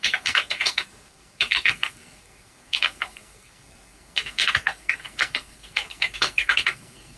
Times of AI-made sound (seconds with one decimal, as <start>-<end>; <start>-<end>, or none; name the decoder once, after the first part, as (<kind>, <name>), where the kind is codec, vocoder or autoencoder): 0.0-7.2 (codec, SNAC)